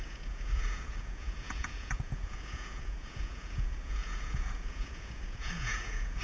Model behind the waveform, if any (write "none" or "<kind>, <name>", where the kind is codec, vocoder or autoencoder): vocoder, Vocos